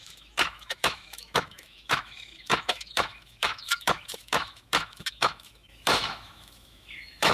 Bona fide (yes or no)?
no